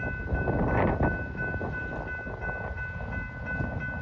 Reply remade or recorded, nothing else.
recorded